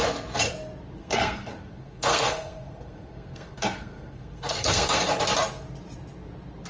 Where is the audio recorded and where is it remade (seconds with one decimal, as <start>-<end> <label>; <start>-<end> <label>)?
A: 0.0-1.0 recorded; 1.0-5.0 remade; 5.0-6.7 recorded